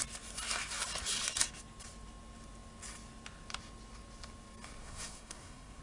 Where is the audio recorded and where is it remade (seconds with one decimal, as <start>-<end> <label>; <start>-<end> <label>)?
0.0-4.8 recorded; 4.8-5.8 remade